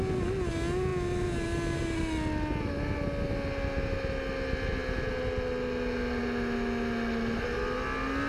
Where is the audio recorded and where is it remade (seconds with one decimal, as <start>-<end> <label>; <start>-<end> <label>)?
0.0-8.3 recorded